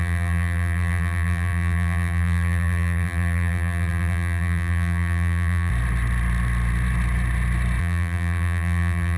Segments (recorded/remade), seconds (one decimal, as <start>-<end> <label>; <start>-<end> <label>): 0.0-5.7 remade; 5.7-7.8 recorded; 7.8-9.2 remade